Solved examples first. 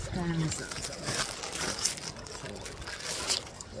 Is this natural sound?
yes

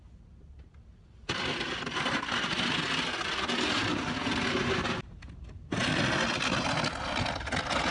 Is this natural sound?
yes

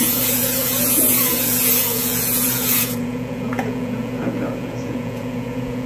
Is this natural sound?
no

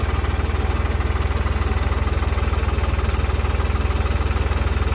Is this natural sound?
yes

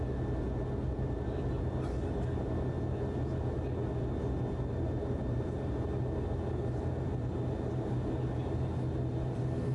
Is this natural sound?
yes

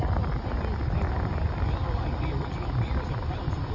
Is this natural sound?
yes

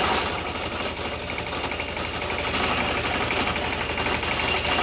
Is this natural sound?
yes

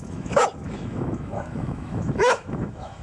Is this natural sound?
no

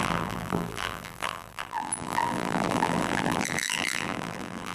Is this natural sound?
no